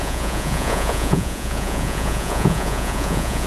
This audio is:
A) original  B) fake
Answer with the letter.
B